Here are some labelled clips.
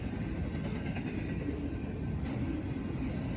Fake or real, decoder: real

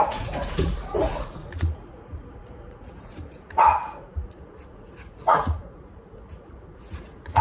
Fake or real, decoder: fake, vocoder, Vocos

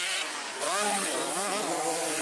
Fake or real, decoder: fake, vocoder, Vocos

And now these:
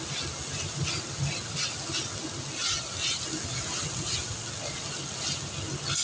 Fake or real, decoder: real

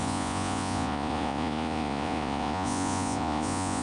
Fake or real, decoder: fake, vocoder, Vocos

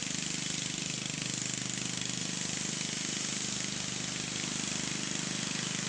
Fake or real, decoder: real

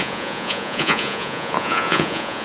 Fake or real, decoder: fake, vocoder, Vocos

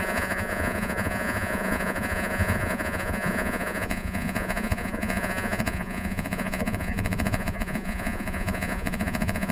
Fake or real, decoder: fake, vocoder, Vocos